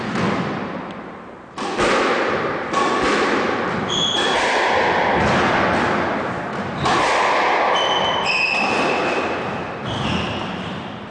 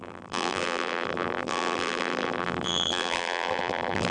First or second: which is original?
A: first